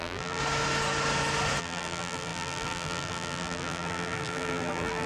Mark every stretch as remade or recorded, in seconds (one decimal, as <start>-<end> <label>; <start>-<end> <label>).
0.0-0.4 remade; 0.4-1.6 recorded; 1.6-5.1 remade